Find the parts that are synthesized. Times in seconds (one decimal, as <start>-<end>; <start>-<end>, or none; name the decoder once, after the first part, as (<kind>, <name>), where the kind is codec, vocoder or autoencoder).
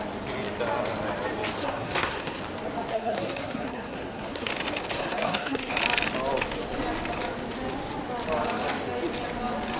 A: 1.6-2.4 (codec, SNAC); 2.9-4.5; 4.9-5.8